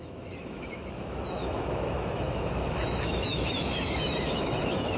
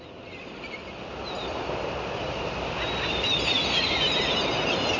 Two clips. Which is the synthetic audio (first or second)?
first